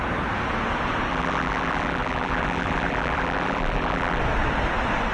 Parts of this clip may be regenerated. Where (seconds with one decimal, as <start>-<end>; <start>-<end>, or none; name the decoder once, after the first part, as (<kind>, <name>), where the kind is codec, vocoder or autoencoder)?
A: 1.1-4.2 (vocoder, BigVGAN v2)